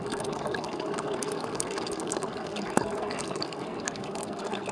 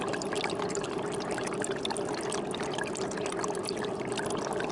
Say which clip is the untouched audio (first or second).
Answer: second